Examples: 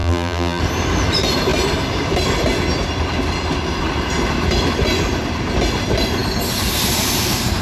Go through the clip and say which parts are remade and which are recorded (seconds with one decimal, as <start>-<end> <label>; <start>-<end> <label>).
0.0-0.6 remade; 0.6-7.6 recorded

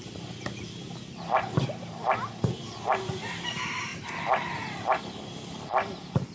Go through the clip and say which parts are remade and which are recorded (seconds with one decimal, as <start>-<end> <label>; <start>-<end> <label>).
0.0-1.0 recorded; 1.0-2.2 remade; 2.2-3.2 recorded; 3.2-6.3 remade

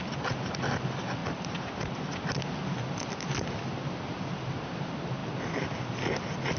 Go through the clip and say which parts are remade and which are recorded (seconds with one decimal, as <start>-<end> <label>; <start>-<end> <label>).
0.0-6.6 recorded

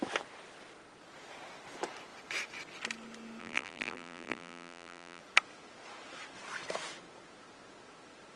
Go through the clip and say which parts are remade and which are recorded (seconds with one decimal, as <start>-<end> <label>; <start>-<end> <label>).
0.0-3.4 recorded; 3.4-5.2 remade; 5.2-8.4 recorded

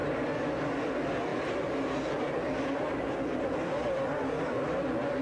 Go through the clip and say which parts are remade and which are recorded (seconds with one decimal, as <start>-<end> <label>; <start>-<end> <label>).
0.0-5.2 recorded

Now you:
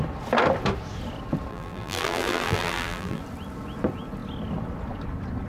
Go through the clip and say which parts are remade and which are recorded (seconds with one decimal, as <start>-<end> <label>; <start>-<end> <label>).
0.0-1.5 recorded; 1.5-3.2 remade; 3.2-5.5 recorded